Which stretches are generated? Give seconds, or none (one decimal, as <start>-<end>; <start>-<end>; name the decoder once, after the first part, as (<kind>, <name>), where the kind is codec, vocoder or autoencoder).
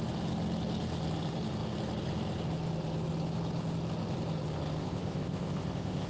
4.8-6.1 (codec, ZipCodec)